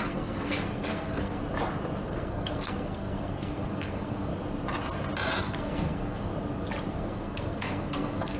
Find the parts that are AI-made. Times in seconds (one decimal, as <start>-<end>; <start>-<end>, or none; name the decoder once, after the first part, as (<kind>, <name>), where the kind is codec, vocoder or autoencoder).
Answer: 0.0-1.4 (codec, SNAC); 2.1-4.3; 5.4-6.3; 6.9-8.4

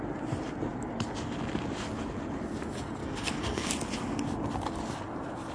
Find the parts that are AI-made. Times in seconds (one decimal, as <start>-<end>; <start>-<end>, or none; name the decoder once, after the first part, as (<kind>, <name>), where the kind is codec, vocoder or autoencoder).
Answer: 3.0-3.7 (codec, SNAC)

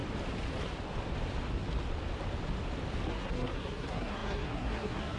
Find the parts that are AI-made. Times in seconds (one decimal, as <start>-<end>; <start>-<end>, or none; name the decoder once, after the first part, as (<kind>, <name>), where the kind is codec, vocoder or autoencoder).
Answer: 3.1-5.2 (codec, SNAC)

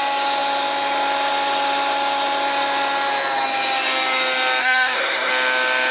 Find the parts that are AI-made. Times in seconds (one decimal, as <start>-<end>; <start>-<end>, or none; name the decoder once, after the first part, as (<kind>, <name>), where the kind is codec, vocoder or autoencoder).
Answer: 4.6-5.3 (codec, SNAC)

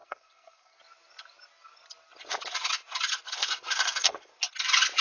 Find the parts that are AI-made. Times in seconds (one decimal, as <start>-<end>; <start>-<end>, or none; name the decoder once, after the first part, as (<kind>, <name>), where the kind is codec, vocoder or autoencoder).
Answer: 0.0-0.8 (codec, SNAC); 3.4-4.3